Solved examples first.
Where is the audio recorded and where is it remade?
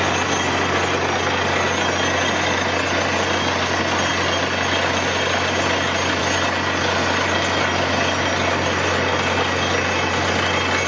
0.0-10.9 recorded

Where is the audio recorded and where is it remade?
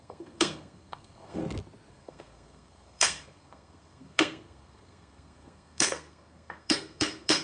0.0-1.4 remade; 1.4-1.9 recorded; 1.9-7.4 remade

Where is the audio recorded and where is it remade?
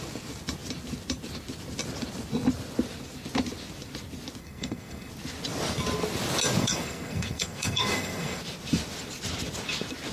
0.0-4.4 recorded; 4.4-5.1 remade; 5.1-6.6 recorded; 6.6-8.4 remade; 8.4-10.1 recorded